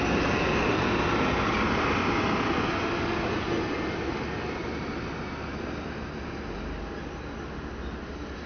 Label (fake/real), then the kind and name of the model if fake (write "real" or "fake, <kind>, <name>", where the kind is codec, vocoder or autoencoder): real